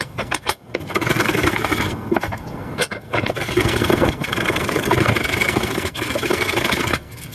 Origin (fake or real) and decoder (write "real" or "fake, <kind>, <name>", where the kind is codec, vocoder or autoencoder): fake, codec, SNAC